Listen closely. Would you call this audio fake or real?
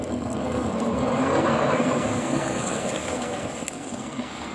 fake